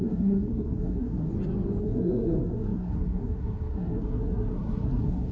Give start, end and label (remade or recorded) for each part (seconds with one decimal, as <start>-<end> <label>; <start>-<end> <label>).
0.0-1.3 remade; 1.3-1.8 recorded; 1.8-5.3 remade